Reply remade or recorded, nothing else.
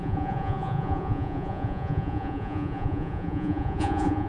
remade